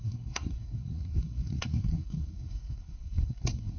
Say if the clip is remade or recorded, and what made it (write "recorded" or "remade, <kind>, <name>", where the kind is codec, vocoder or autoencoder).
remade, codec, SNAC